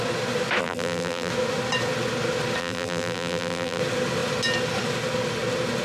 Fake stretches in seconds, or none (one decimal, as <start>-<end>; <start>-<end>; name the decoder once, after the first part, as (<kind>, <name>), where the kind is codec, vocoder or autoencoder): 0.6-1.3 (vocoder, BigVGAN v2); 2.6-3.8